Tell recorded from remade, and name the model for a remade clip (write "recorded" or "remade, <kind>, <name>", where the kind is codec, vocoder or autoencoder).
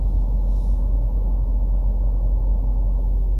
recorded